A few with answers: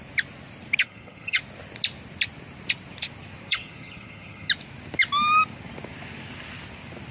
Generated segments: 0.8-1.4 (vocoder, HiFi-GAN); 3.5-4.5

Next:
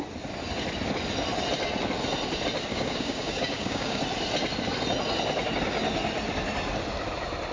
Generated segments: 2.7-4.0 (codec, DAC)

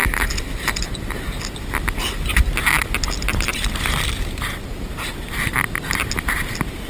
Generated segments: none

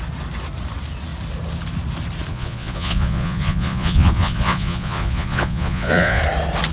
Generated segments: 2.3-6.2 (vocoder, Vocos)

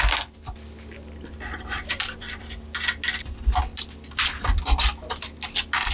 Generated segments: 1.7-2.5 (vocoder, BigVGAN v2)